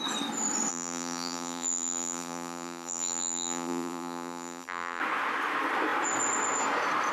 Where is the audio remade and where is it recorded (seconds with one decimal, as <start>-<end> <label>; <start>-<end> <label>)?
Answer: 0.0-0.7 recorded; 0.7-5.0 remade; 5.0-7.1 recorded